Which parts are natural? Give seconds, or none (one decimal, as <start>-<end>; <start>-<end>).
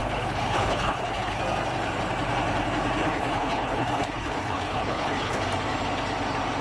1.4-3.0; 5.4-6.6